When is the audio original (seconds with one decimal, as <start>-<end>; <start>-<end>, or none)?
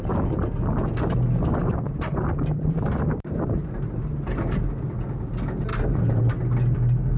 0.0-1.6; 4.5-5.7; 6.2-7.2